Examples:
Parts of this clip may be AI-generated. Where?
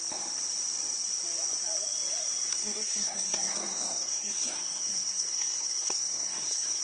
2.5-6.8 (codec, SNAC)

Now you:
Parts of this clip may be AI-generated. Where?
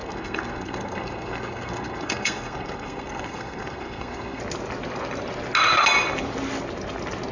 0.0-4.4 (codec, SNAC)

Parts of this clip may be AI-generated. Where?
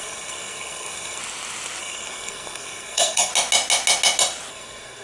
0.0-1.2 (codec, SNAC); 1.8-3.3; 4.5-5.0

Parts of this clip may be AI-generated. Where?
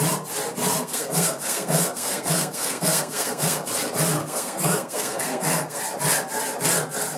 0.8-3.7 (codec, SNAC); 4.2-5.8